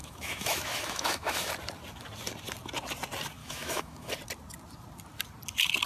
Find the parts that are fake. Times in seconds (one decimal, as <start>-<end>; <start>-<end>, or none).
0.0-1.5; 3.4-4.1